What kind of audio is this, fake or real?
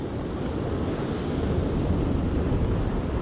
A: real